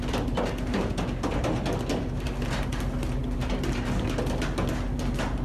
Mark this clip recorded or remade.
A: recorded